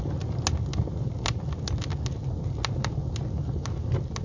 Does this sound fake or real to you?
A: real